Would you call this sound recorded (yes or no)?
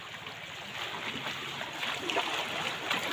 yes